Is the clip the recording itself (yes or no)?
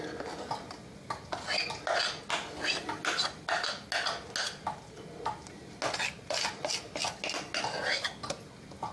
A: yes